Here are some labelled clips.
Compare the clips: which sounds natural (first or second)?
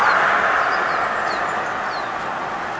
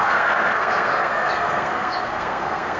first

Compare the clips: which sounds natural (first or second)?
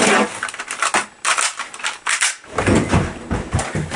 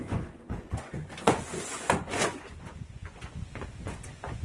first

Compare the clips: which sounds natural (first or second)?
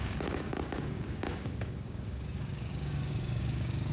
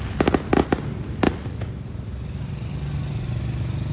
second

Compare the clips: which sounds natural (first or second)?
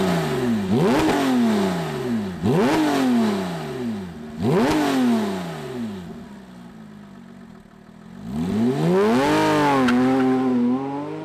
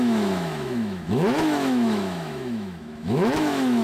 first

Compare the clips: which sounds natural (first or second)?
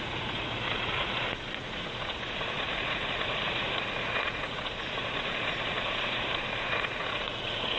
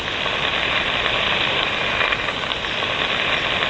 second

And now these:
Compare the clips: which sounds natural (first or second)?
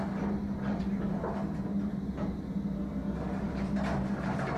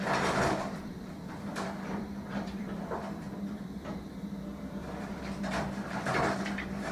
first